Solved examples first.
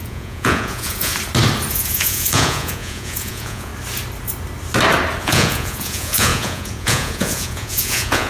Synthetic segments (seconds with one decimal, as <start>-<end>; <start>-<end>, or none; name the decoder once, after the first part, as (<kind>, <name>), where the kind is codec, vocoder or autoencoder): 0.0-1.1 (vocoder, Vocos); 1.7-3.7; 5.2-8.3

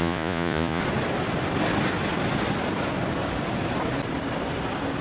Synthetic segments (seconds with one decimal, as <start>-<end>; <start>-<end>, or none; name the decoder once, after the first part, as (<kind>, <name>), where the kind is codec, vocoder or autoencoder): 0.0-0.8 (vocoder, Vocos)

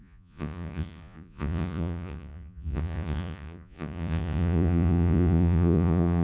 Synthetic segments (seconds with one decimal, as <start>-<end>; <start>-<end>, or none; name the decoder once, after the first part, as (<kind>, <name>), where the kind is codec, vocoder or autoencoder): 0.0-6.2 (vocoder, Vocos)